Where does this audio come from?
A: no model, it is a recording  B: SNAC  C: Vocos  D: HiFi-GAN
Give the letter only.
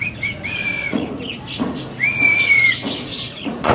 C